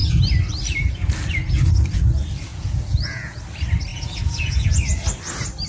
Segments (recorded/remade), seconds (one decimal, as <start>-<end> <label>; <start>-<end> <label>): 0.0-2.5 recorded; 2.5-3.4 remade; 3.4-3.9 recorded; 3.9-4.8 remade; 4.8-5.7 recorded